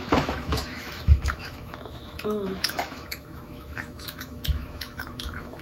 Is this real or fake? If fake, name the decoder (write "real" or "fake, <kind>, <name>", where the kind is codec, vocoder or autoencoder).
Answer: fake, autoencoder, DAC-VAE